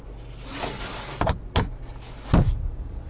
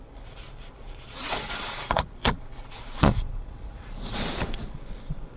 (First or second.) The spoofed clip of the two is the second